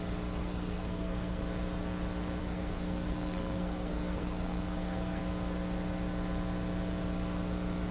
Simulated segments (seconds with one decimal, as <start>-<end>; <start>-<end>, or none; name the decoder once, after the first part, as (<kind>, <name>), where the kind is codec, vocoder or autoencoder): 0.4-1.4 (codec, SNAC); 2.4-5.2